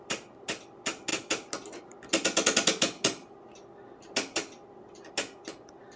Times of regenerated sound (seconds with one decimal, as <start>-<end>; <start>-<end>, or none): none